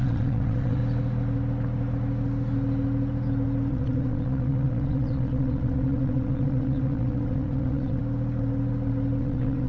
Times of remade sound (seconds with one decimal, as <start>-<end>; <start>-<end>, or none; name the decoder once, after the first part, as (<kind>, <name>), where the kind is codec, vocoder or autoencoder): 0.0-0.8 (vocoder, WaveNeXt); 3.7-8.0; 9.2-9.7